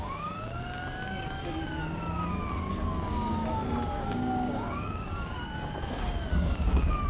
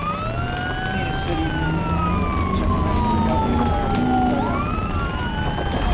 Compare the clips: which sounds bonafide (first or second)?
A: second